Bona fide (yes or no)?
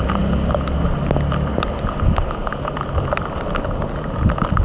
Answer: yes